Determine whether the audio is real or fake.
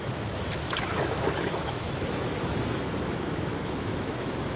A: fake